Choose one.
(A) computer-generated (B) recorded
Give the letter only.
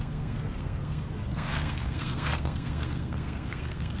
A